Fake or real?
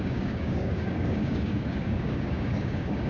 fake